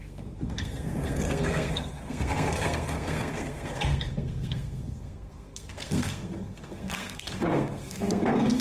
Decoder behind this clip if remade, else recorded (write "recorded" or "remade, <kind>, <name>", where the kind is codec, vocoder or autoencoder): remade, codec, SNAC